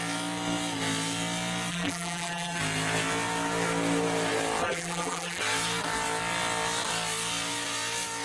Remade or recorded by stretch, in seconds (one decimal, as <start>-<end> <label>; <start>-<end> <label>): 0.0-1.7 recorded; 1.7-2.6 remade; 2.6-4.6 recorded; 4.6-5.4 remade; 5.4-8.2 recorded